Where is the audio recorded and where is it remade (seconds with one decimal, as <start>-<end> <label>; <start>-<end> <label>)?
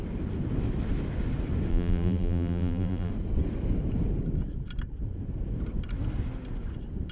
0.0-1.7 recorded; 1.7-3.1 remade; 3.1-7.1 recorded